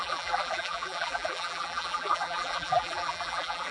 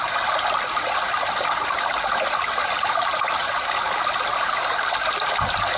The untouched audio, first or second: second